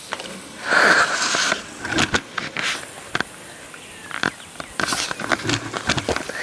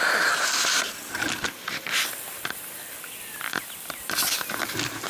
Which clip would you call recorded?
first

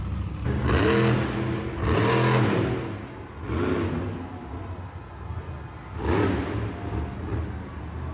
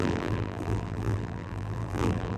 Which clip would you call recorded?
first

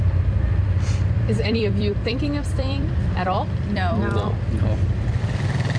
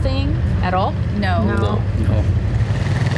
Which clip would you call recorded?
second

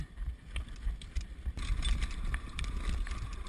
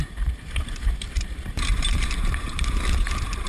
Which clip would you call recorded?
first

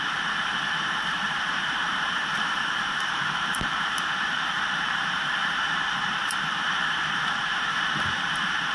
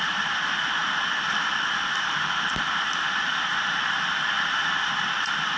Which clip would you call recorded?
second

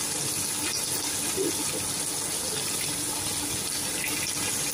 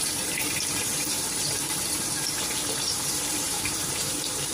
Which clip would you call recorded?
first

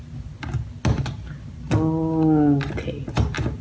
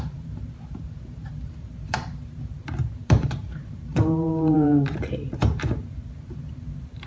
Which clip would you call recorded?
first